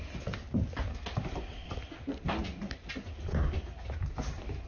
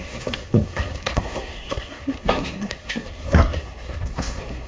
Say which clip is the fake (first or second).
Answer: second